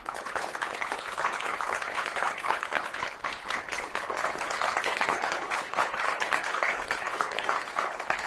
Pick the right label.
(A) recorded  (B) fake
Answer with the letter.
B